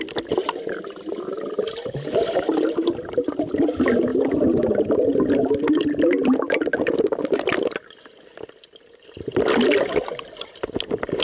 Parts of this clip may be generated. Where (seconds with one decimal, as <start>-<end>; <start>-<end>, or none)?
none